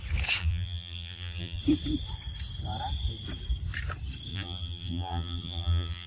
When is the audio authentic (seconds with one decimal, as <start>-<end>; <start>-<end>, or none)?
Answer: 0.0-0.4; 1.6-4.3